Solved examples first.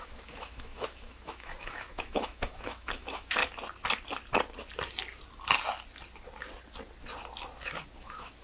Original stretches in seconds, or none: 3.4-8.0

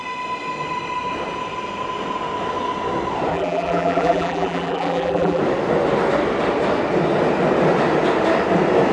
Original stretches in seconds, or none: 0.0-3.3; 5.4-8.9

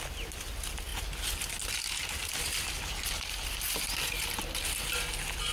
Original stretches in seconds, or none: 0.0-5.5

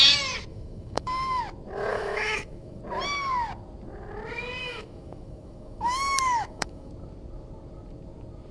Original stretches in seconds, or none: 0.0-0.5; 1.4-1.9; 2.8-4.6; 6.9-8.5